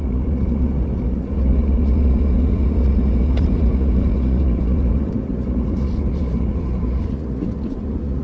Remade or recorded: remade